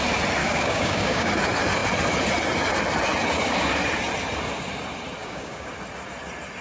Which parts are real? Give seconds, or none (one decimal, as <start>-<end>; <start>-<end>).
0.0-0.4; 1.3-5.2; 5.7-6.6